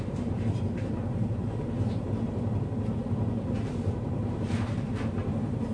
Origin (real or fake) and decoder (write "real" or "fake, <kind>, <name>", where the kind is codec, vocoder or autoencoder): fake, vocoder, BigVGAN v2